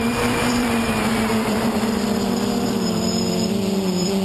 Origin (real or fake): fake